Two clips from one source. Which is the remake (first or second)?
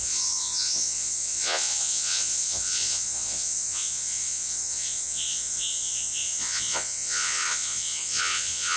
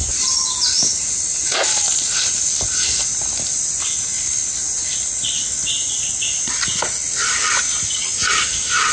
first